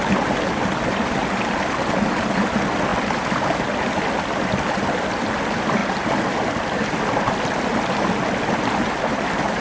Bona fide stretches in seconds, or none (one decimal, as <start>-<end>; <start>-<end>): 0.0-9.6